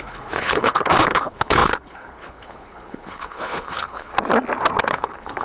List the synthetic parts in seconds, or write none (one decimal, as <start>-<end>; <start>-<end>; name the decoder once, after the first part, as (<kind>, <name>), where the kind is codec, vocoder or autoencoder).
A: 0.0-4.1 (codec, HILCodec); 4.8-5.4